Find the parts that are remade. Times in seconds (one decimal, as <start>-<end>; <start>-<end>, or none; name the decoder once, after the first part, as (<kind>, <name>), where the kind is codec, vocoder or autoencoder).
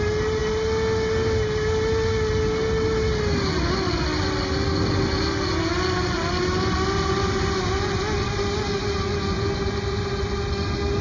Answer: none